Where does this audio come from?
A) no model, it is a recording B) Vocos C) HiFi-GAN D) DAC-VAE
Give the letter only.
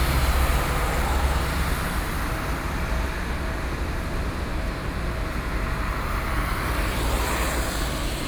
A